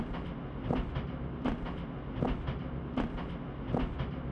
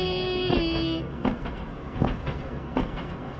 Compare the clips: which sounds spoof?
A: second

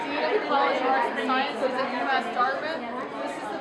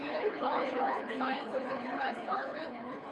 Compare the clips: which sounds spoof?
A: second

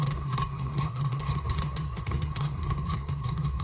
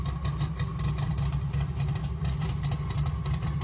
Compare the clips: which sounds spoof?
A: first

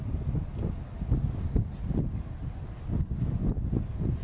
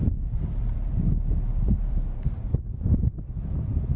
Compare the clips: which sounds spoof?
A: second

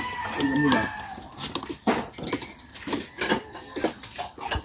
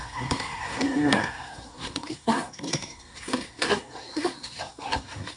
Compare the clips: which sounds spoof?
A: second